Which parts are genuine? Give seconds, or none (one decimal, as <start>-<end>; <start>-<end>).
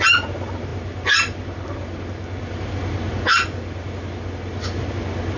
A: 0.0-5.4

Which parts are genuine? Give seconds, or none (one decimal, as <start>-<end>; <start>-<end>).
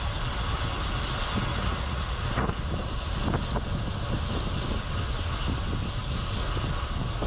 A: 0.0-1.5; 2.5-7.3